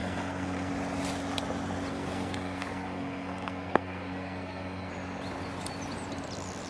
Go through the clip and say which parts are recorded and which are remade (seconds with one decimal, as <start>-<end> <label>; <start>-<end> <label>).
0.0-0.7 remade; 0.7-1.9 recorded; 1.9-4.9 remade; 4.9-6.7 recorded